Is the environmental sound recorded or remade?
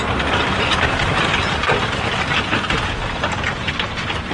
recorded